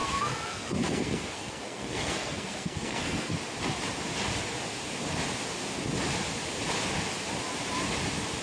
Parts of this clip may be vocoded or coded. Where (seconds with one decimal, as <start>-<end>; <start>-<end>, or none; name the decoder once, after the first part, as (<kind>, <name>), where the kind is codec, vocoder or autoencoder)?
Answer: 0.0-3.3 (codec, SNAC)